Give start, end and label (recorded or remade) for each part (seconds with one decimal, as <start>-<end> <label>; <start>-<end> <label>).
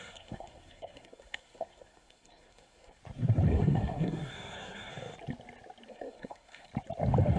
0.0-3.0 remade; 3.0-3.5 recorded; 3.5-4.9 remade; 4.9-5.9 recorded; 5.9-6.7 remade; 6.7-7.4 recorded